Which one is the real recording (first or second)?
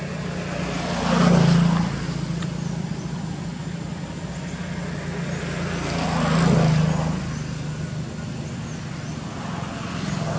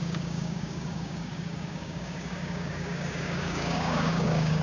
first